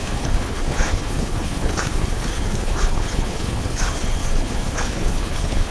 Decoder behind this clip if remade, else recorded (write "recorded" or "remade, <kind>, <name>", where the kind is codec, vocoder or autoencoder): remade, codec, HILCodec